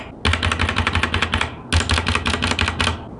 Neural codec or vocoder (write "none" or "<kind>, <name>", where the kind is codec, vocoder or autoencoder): none